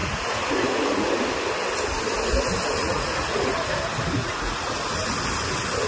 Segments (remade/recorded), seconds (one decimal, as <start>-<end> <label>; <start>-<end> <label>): 0.0-0.5 remade; 0.5-2.8 recorded; 2.8-3.7 remade; 3.7-4.2 recorded; 4.2-4.7 remade; 4.7-5.9 recorded